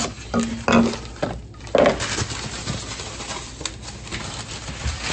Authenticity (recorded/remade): recorded